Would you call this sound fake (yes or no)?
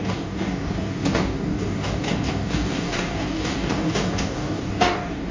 yes